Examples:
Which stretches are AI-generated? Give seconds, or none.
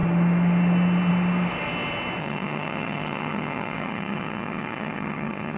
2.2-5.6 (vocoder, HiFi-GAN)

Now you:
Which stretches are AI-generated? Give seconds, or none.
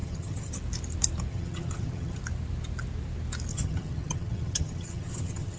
0.0-0.5 (vocoder, HiFi-GAN); 1.3-2.2; 3.5-5.6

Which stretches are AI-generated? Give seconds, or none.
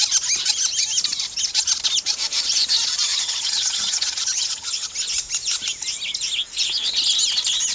3.1-4.9 (vocoder, HiFi-GAN)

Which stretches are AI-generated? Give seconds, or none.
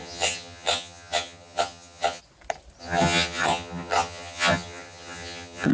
0.0-2.2 (vocoder, HiFi-GAN); 2.8-5.7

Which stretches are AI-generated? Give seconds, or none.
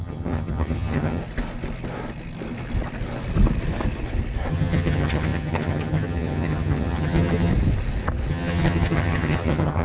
0.0-1.2 (vocoder, HiFi-GAN); 4.5-7.5; 8.3-9.8